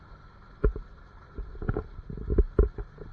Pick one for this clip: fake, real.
real